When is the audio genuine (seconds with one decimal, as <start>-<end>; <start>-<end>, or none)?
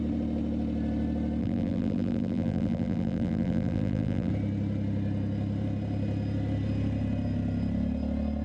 0.0-1.4; 4.3-8.4